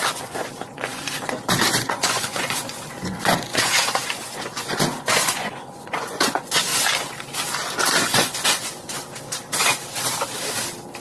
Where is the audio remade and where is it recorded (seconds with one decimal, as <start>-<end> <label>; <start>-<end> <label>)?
0.0-6.7 remade; 6.7-8.0 recorded; 8.0-9.0 remade; 9.0-11.0 recorded